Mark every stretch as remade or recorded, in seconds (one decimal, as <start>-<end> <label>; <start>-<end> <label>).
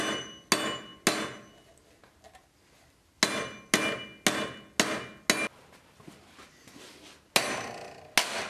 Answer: 0.0-8.5 recorded